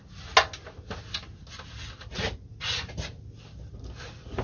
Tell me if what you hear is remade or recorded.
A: recorded